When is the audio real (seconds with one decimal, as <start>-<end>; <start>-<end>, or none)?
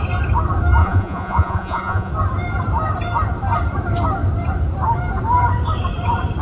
0.0-0.8; 2.1-6.4